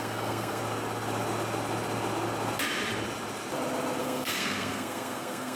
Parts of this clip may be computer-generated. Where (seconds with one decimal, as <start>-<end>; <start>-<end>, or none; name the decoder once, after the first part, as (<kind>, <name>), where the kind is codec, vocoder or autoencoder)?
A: 0.0-0.6 (codec, SNAC); 4.0-5.6